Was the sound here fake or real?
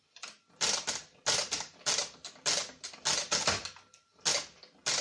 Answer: real